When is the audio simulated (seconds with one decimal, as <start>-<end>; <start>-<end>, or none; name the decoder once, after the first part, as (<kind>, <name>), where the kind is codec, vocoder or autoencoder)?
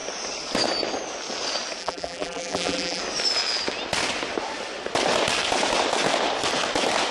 1.8-3.0 (vocoder, BigVGAN v2)